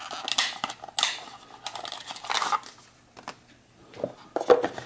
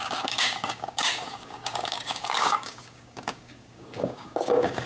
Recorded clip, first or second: first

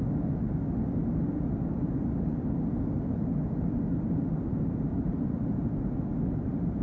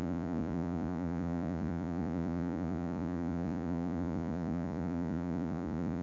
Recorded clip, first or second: first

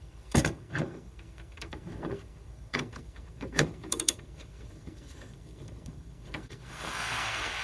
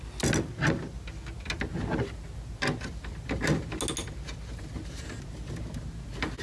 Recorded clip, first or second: second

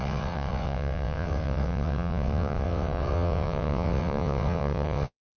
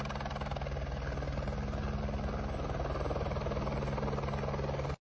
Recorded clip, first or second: second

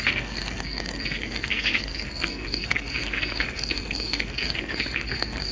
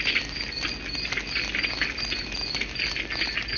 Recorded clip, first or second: second